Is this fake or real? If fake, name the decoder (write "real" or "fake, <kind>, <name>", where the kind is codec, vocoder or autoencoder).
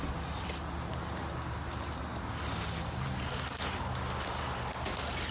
real